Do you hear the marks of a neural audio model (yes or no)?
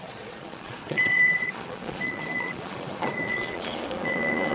yes